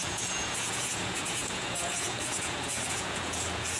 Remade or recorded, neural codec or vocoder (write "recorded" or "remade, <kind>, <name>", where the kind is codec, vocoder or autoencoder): remade, vocoder, Vocos